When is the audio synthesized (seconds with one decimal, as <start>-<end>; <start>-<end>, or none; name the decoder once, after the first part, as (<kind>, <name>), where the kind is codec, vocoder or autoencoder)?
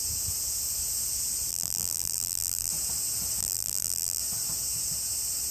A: 1.5-2.7 (vocoder, BigVGAN v2); 3.4-4.2